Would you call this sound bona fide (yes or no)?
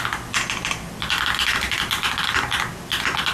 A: yes